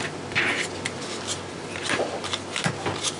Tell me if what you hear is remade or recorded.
recorded